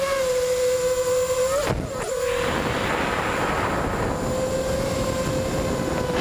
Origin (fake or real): real